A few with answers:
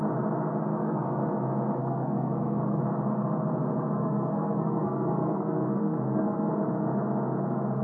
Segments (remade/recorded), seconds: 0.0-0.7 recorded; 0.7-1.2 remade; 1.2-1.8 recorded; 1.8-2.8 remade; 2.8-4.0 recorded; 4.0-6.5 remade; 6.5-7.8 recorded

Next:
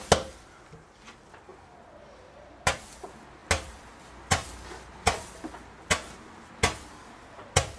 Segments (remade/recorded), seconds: 0.0-7.8 recorded

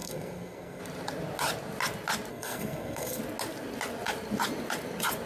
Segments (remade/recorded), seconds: 0.0-0.8 remade; 0.8-2.3 recorded; 2.3-3.2 remade; 3.2-5.3 recorded

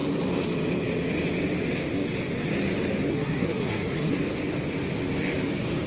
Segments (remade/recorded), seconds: 0.0-3.1 recorded; 3.1-4.2 remade; 4.2-5.9 recorded